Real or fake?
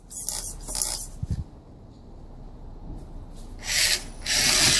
real